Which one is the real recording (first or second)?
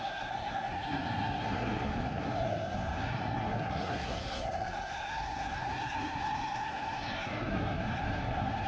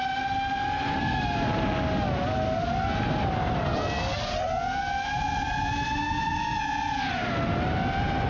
second